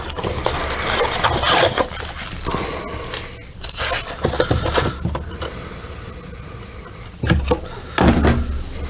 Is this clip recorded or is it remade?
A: recorded